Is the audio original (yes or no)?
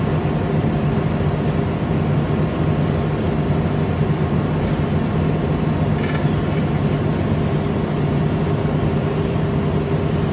yes